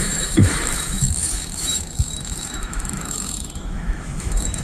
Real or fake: fake